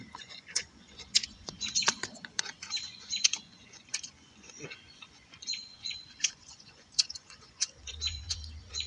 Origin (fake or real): fake